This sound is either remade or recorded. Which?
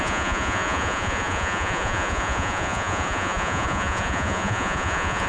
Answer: remade